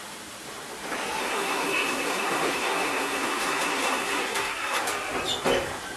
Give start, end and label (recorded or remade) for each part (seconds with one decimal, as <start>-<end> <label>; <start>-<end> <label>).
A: 0.0-1.2 recorded; 1.2-4.8 remade; 4.8-6.0 recorded